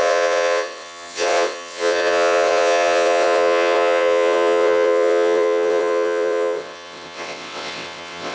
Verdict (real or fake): fake